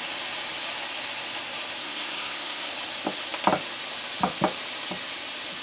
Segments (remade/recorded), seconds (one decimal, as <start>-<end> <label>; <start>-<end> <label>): 0.0-1.8 recorded; 1.8-2.7 remade; 2.7-5.6 recorded